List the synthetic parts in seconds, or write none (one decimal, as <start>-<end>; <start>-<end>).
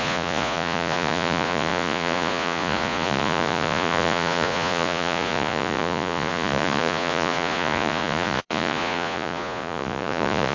0.0-10.5